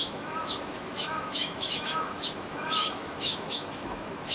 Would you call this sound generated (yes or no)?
yes